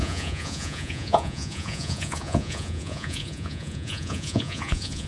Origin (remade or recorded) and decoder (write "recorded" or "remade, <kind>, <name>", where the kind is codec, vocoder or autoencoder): remade, vocoder, Vocos